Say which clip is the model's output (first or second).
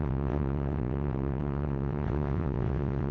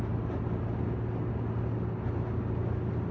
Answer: first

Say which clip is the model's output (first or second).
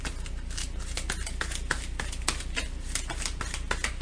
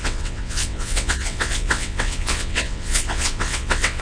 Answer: second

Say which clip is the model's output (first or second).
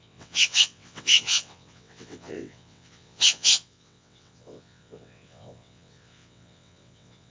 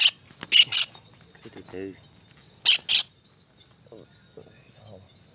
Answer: first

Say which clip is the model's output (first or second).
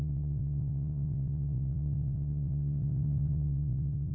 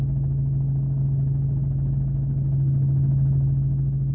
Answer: first